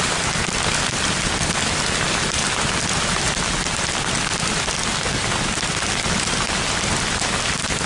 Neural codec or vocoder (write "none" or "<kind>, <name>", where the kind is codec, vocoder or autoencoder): none